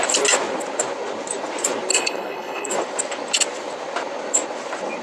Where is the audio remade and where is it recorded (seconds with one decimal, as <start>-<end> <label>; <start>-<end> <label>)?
0.0-1.9 recorded; 1.9-2.7 remade; 2.7-5.0 recorded